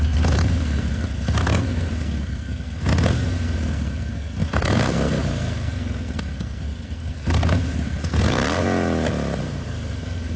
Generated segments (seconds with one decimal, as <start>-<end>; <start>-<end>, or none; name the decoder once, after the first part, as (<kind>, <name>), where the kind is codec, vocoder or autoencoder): 0.0-8.4 (codec, SNAC); 9.4-10.4